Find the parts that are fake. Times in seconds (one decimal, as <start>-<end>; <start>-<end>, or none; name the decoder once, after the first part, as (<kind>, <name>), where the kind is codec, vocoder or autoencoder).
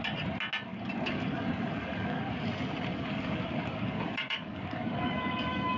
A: 0.7-2.2 (codec, DAC); 2.9-5.8